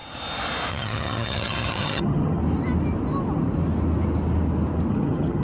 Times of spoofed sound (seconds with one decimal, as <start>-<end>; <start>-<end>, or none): 0.7-2.4; 4.9-5.4